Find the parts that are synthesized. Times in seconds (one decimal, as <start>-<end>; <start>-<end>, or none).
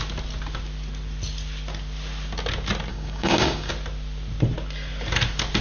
2.9-3.7